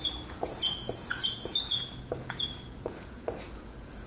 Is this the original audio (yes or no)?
no